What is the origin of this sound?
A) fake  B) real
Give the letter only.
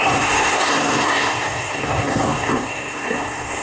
A